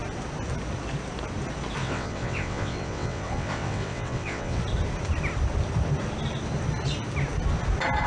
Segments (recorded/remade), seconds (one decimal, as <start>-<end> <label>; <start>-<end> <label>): 0.0-1.8 recorded; 1.8-4.6 remade; 4.6-8.1 recorded